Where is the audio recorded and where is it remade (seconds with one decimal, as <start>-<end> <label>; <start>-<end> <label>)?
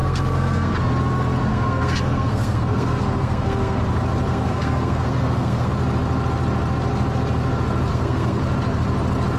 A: 0.0-0.8 remade; 0.8-1.5 recorded; 1.5-3.8 remade; 3.8-4.3 recorded; 4.3-5.7 remade; 5.7-7.9 recorded; 7.9-8.4 remade; 8.4-9.4 recorded